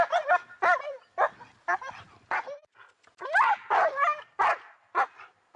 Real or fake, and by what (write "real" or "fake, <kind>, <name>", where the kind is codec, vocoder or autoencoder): real